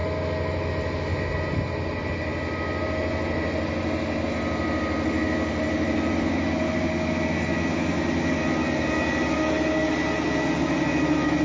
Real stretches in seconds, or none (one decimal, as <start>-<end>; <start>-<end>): 0.0-11.4